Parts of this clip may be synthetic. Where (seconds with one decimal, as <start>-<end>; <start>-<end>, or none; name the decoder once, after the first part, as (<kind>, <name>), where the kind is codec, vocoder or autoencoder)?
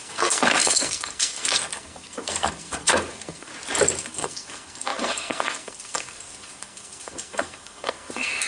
0.0-3.5 (codec, SNAC); 4.0-8.5